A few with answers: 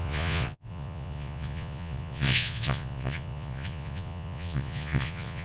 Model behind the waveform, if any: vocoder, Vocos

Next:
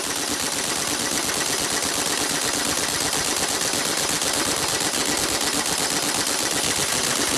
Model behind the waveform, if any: none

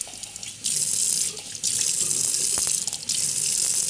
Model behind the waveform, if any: none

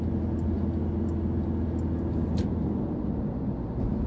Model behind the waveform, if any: none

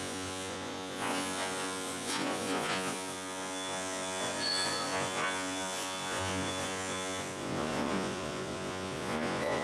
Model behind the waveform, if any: vocoder, Vocos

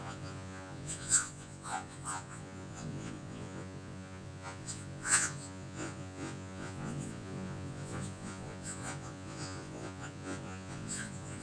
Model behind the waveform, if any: vocoder, Vocos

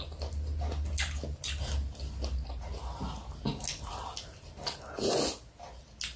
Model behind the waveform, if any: none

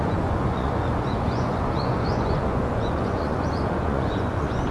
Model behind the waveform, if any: vocoder, Vocos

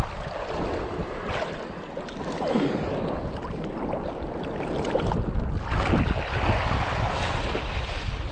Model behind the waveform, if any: none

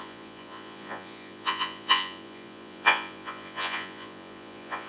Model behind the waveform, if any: vocoder, Vocos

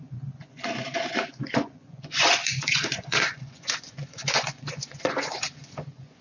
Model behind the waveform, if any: vocoder, Vocos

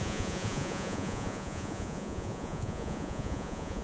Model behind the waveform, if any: vocoder, Vocos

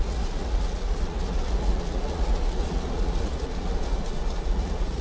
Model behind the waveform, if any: vocoder, Vocos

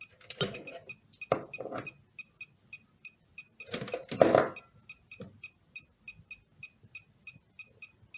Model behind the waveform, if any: none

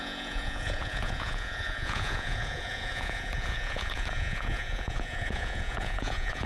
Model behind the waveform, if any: vocoder, Vocos